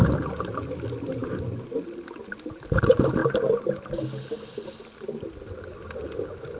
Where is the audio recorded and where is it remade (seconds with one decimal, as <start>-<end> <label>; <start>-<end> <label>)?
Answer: 0.0-6.6 recorded